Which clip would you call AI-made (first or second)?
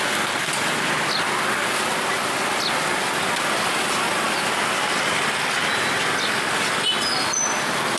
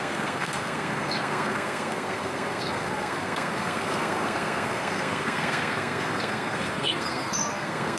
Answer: second